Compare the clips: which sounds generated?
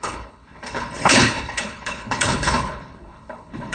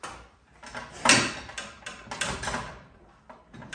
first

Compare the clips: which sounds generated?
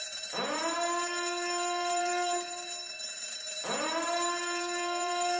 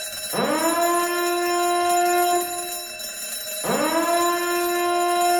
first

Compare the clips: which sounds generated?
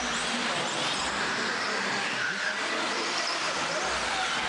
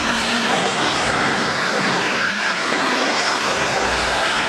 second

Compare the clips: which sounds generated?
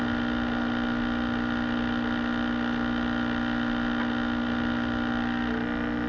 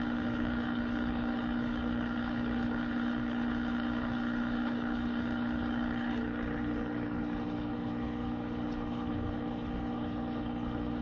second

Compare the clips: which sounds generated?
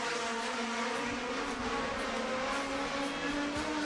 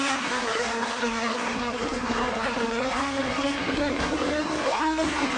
second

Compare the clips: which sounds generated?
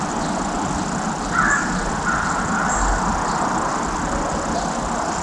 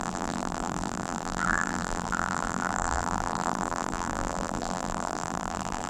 second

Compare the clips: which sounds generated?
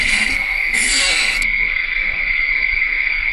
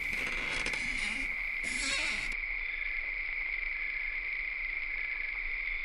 first